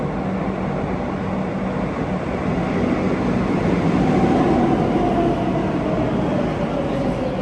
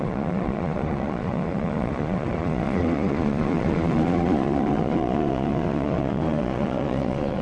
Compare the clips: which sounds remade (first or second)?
second